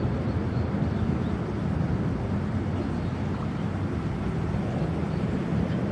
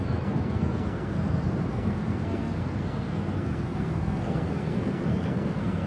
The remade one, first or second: second